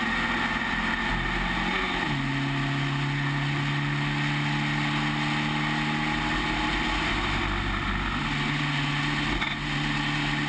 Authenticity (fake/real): real